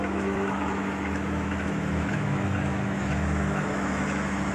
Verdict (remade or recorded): remade